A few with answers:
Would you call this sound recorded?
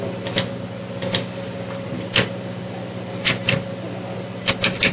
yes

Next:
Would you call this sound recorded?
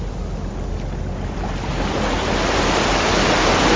yes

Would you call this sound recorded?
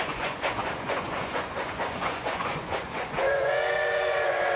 no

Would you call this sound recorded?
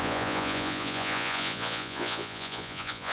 no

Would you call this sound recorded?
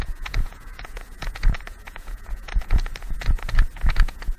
no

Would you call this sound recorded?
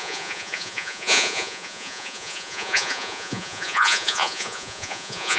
no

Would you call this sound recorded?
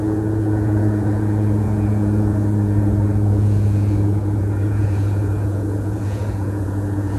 no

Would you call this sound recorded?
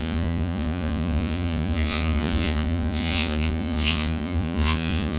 no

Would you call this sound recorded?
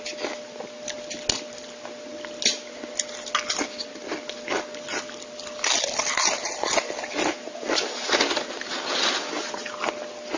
yes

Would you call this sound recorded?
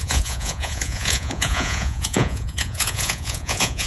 no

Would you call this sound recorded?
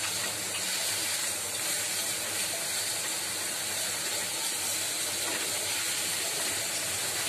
yes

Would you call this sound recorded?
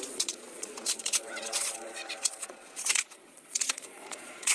no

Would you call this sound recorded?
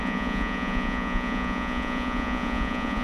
no